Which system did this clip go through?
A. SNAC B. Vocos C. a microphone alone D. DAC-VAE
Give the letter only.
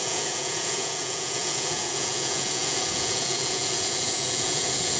B